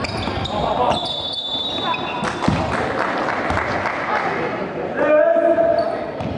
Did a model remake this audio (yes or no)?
no